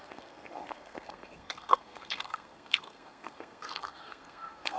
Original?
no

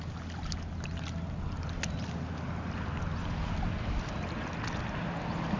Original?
yes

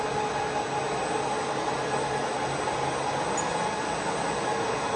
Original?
yes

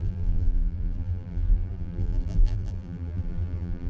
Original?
no